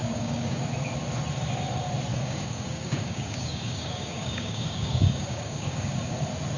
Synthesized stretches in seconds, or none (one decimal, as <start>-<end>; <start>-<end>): 0.0-0.7; 2.1-6.1